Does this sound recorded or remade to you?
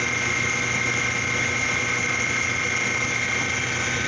recorded